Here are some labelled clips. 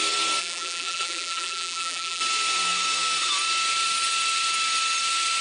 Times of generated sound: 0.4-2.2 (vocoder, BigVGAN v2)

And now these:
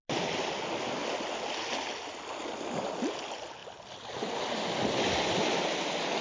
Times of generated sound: none

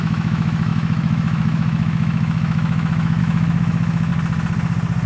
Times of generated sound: 0.0-4.1 (autoencoder, DAC-VAE)